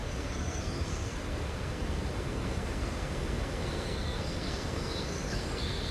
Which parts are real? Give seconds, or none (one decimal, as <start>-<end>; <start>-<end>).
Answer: none